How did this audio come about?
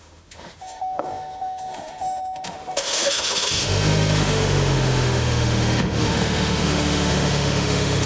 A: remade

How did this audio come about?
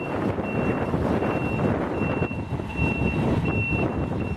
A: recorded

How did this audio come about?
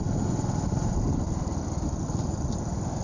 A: recorded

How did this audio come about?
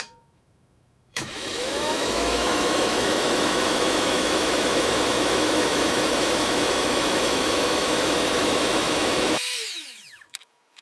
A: remade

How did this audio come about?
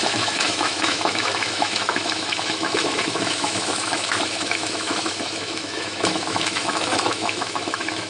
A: remade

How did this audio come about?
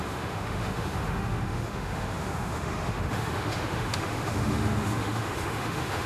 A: remade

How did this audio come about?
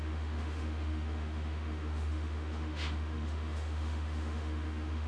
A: remade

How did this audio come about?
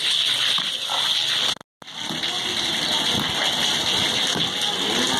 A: recorded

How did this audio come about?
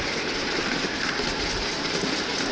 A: recorded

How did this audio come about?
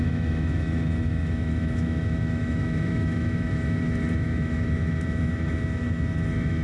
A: remade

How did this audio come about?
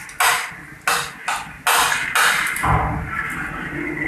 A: recorded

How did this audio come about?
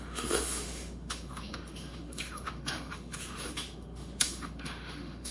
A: remade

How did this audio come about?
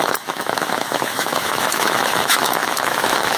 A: remade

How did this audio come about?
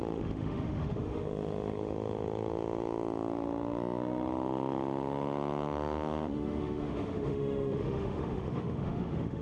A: remade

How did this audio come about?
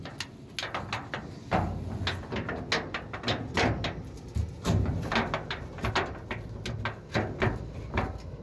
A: recorded